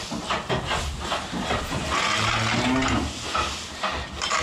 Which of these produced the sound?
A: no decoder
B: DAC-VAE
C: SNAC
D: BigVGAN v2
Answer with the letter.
A